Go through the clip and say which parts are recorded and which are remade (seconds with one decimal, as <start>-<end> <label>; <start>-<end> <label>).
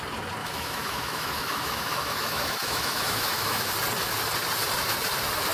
0.0-0.4 recorded; 0.4-3.7 remade; 3.7-5.5 recorded